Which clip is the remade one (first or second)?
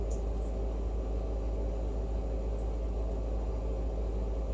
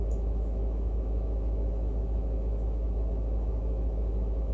second